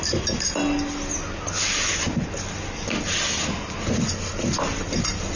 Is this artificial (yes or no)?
no